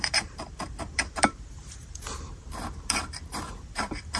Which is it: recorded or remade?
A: remade